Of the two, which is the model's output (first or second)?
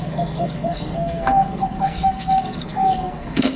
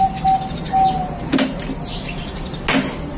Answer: first